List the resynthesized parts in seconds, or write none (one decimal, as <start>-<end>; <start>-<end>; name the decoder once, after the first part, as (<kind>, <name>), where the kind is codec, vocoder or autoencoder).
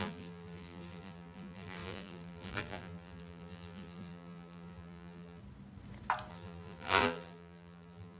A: 0.0-5.4 (vocoder, BigVGAN v2); 6.3-8.2